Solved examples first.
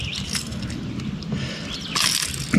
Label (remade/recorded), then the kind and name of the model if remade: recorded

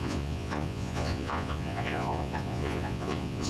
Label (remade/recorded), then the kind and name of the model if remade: remade, vocoder, Vocos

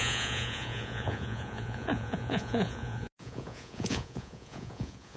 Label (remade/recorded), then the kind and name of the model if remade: remade, vocoder, Vocos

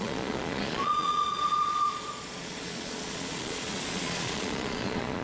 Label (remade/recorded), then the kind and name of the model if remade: remade, vocoder, Vocos